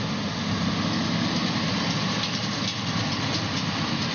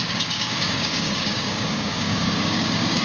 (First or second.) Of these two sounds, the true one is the first